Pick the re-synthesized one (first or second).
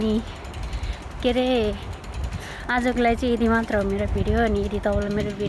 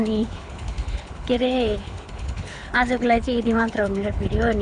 second